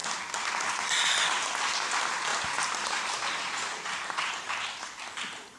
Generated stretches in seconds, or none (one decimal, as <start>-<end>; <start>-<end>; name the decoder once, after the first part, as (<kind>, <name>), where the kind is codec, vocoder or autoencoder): 2.3-4.3 (vocoder, BigVGAN v2)